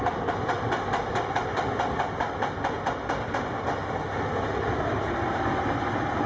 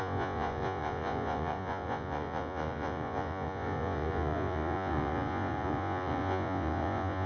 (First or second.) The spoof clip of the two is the second